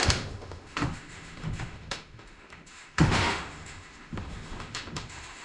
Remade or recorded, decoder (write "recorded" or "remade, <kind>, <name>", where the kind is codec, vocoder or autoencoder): remade, autoencoder, DAC-VAE